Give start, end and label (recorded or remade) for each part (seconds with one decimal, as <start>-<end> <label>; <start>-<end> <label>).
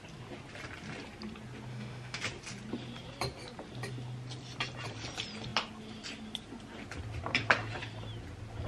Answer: 0.0-1.7 recorded; 1.7-2.2 remade; 2.2-8.7 recorded